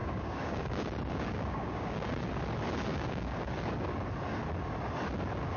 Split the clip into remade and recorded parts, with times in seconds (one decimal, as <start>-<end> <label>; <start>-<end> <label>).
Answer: 0.0-2.2 remade; 2.2-2.9 recorded; 2.9-3.5 remade; 3.5-5.6 recorded